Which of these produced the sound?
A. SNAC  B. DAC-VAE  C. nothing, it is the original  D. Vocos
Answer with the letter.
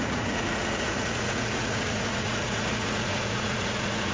D